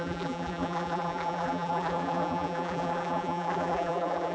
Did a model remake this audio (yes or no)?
yes